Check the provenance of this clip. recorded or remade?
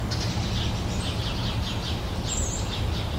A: recorded